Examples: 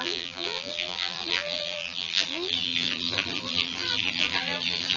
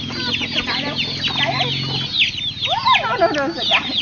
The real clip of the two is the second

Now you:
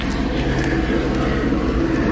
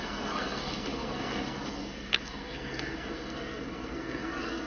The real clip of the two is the first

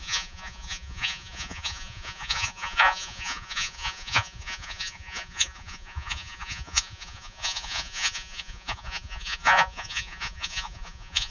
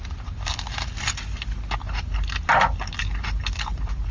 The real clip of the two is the second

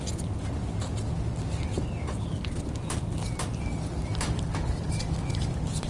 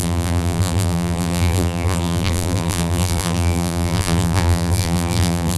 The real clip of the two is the first